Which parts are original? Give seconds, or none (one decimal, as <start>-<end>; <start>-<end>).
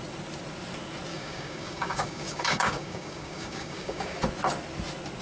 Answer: 0.0-1.1; 4.2-5.2